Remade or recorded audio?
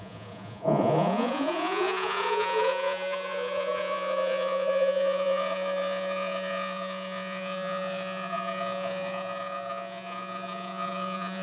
remade